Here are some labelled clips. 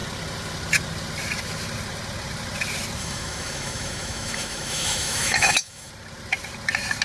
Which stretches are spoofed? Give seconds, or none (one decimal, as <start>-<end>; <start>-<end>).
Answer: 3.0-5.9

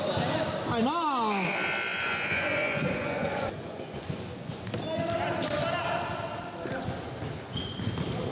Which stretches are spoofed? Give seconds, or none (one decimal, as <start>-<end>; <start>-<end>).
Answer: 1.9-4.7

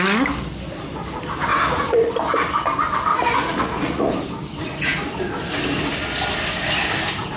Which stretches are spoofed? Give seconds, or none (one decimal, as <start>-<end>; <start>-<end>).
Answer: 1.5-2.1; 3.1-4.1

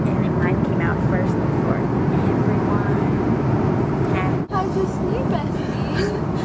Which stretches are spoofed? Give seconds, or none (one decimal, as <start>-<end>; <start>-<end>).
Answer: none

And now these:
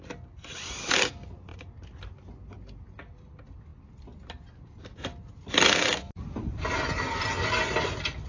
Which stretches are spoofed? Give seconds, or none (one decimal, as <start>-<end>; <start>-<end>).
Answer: none

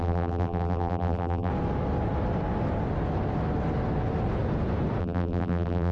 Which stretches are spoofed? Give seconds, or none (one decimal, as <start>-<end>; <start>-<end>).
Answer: 0.0-1.5; 5.0-5.9

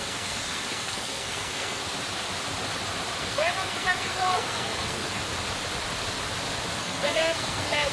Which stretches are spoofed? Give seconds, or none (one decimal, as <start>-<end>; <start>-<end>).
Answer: 0.0-1.8; 3.2-5.2; 6.8-7.9